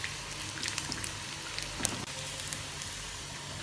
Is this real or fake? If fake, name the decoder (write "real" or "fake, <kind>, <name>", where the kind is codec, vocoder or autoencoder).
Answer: real